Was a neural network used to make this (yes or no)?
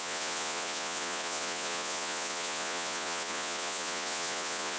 yes